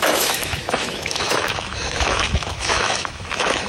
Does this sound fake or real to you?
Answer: fake